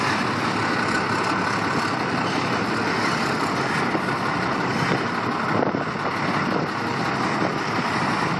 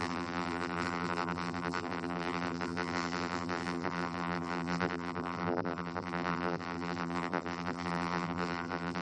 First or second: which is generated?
second